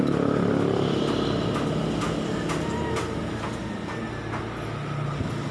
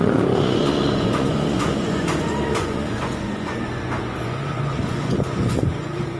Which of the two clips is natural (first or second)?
first